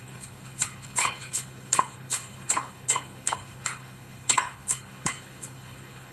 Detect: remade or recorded remade